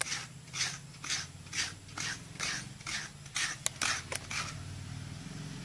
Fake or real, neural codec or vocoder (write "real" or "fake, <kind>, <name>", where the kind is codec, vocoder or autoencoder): real